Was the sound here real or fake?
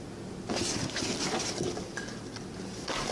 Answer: real